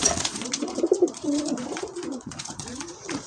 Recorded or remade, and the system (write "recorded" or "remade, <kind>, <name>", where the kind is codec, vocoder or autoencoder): remade, vocoder, Vocos